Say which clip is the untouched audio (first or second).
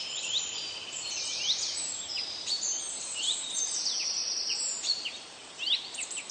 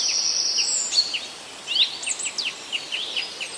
second